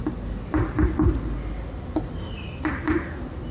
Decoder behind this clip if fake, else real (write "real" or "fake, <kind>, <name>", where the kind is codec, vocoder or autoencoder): real